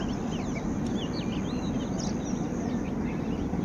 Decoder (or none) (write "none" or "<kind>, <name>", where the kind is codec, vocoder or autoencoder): none